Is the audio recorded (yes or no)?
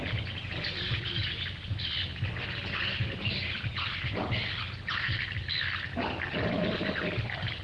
yes